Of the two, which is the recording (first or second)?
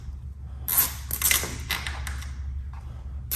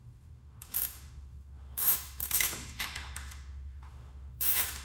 first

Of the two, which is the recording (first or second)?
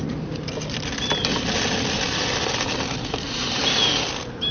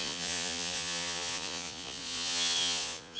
first